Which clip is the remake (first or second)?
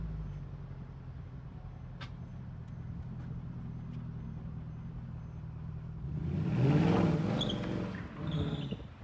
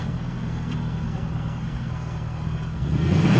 second